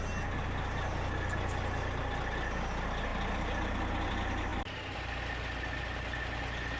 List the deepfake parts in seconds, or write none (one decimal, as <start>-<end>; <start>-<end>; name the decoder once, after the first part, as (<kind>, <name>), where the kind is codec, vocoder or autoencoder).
none